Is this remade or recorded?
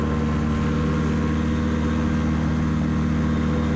recorded